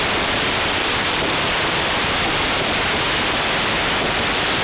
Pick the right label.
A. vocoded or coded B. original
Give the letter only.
A